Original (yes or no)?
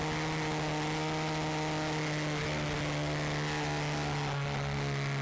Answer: yes